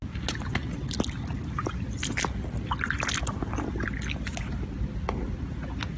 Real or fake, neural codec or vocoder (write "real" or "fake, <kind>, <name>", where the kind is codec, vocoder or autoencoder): real